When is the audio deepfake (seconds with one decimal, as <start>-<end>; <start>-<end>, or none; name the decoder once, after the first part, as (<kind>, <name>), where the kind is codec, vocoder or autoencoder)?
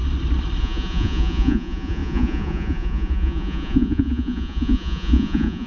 0.6-5.7 (vocoder, Vocos)